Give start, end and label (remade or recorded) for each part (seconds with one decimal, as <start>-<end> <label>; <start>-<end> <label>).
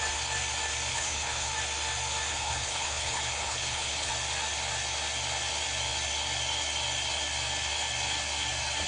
0.0-0.9 recorded; 0.9-1.5 remade; 1.5-2.3 recorded; 2.3-4.1 remade; 4.1-8.9 recorded